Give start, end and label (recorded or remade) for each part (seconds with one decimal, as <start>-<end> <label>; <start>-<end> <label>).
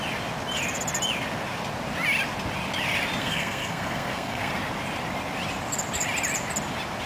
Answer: 0.0-3.2 recorded; 3.2-4.5 remade; 4.5-7.1 recorded